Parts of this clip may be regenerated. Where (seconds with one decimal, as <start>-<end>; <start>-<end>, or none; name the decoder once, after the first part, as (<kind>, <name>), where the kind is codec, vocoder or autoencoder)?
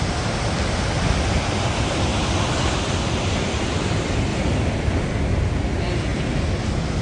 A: 2.1-3.3 (vocoder, BigVGAN v2); 6.1-7.0